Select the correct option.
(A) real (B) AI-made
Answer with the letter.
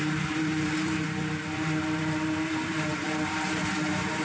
B